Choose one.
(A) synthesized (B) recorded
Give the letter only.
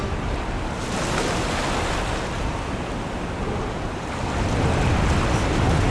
B